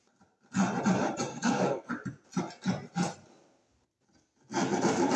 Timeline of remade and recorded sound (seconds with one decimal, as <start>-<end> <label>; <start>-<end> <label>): 0.0-1.3 recorded; 1.3-1.9 remade; 1.9-5.2 recorded